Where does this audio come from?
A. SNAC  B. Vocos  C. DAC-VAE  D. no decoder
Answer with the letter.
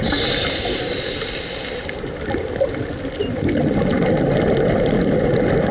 D